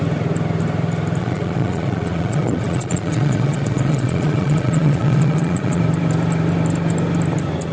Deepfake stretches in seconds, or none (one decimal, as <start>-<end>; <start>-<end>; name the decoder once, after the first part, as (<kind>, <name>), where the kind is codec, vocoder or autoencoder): 1.2-5.8 (vocoder, Vocos)